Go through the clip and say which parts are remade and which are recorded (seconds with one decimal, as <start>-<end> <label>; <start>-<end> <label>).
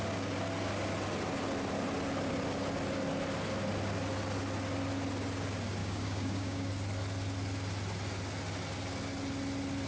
0.0-5.8 recorded; 5.8-6.7 remade; 6.7-9.9 recorded